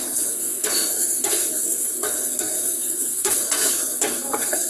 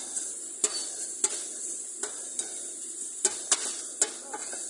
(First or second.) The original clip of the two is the second